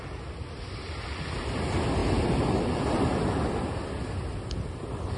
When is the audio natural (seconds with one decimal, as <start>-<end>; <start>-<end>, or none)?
0.0-2.0; 3.5-5.2